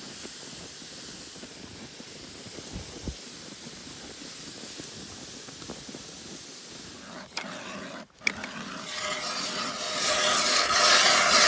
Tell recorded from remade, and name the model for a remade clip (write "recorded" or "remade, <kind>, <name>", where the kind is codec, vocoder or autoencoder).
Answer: recorded